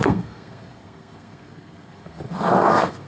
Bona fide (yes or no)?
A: no